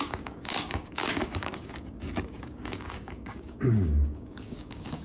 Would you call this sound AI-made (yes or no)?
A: yes